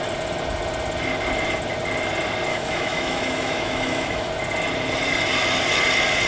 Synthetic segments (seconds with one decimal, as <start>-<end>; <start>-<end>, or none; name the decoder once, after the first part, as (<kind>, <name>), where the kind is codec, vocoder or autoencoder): 2.5-4.3 (autoencoder, DAC-VAE)